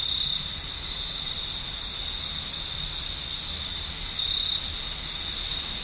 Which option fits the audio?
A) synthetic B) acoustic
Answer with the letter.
B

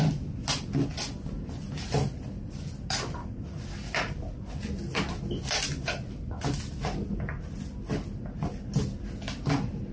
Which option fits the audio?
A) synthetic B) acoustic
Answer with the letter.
B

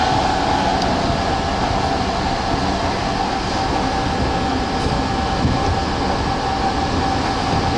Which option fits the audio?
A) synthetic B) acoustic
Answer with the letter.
B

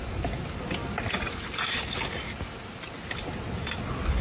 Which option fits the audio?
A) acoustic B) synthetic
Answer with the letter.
A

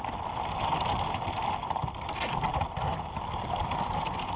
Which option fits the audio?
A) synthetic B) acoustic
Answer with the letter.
B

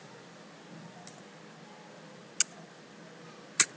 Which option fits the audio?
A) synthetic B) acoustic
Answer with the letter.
B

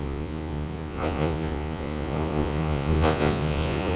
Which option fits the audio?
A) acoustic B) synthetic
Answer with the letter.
B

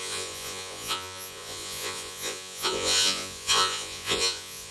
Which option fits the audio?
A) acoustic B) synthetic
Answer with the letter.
B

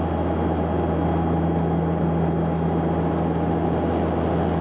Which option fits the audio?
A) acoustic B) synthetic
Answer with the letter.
A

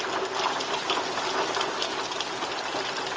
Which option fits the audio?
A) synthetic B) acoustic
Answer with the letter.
B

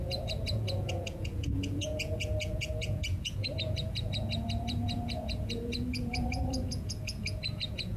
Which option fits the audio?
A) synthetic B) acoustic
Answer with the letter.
A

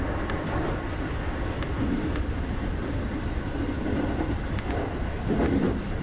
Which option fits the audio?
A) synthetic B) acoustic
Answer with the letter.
B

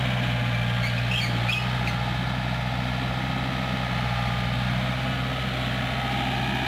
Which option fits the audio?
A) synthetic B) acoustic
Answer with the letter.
B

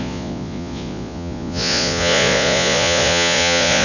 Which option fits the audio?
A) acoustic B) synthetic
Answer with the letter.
B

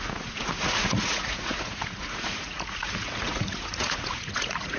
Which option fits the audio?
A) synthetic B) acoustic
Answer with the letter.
A